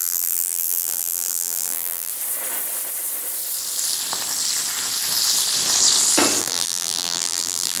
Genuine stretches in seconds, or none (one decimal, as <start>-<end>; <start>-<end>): 2.1-6.4